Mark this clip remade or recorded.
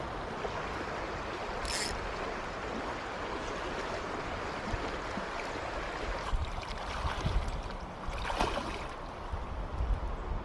recorded